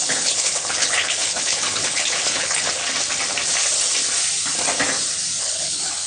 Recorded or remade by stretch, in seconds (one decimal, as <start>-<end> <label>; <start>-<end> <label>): 0.0-2.8 remade; 2.8-5.4 recorded; 5.4-6.1 remade